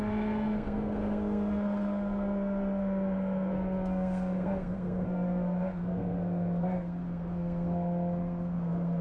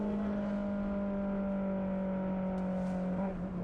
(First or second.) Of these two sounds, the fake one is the first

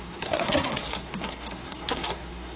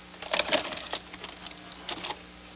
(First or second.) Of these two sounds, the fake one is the first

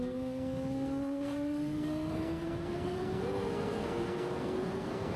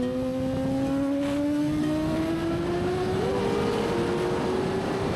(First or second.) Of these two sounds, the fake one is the first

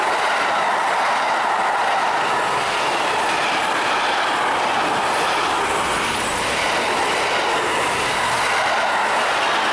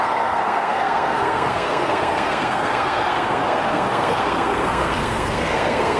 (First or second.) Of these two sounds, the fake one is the second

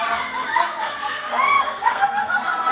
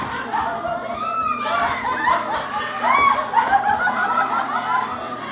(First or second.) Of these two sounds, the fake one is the first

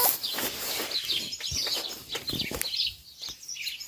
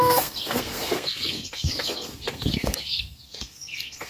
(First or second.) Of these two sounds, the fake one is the second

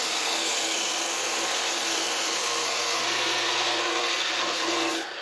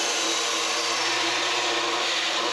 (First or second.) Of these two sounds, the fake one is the first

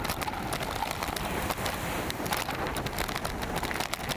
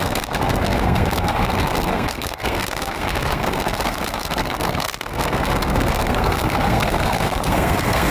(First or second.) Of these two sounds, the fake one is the second